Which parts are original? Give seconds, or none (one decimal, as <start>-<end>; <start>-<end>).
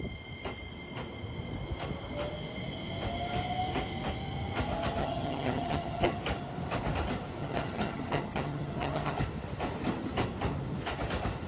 0.0-5.0; 6.2-7.4; 9.2-11.5